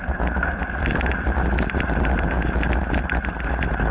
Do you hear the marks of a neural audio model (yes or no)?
no